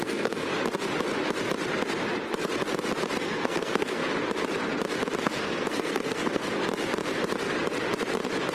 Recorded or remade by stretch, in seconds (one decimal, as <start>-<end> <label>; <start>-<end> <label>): 0.0-0.5 remade; 0.5-3.2 recorded; 3.2-4.0 remade; 4.0-5.2 recorded; 5.2-6.4 remade; 6.4-8.5 recorded